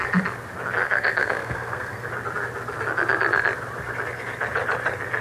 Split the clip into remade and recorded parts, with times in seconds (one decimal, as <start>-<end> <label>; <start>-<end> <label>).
0.0-0.8 recorded; 0.8-2.1 remade; 2.1-5.2 recorded